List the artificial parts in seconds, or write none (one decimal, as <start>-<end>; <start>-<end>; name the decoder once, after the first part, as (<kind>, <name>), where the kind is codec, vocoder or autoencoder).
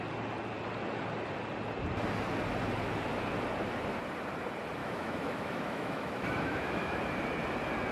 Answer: 4.8-7.0 (autoencoder, DAC-VAE)